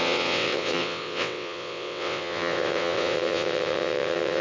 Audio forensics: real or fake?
fake